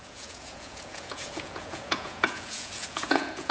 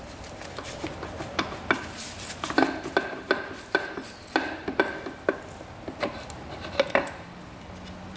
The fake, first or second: first